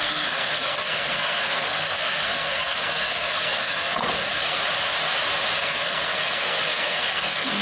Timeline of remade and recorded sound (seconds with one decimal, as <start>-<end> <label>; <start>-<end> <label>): 0.0-4.6 remade; 4.6-5.6 recorded; 5.6-7.6 remade